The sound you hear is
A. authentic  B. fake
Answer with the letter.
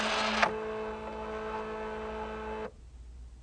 A